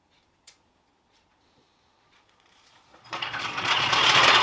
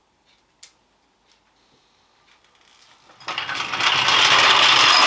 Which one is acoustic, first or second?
second